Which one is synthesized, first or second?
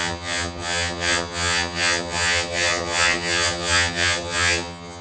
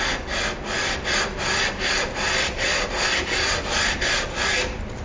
first